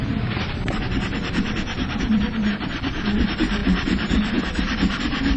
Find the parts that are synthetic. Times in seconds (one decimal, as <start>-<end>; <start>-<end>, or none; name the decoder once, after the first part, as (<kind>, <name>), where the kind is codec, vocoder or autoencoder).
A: 0.0-5.4 (vocoder, BigVGAN v2)